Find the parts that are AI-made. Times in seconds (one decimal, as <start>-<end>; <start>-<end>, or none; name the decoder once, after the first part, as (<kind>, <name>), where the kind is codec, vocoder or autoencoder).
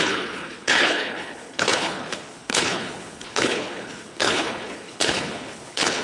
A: 0.0-6.0 (codec, HILCodec)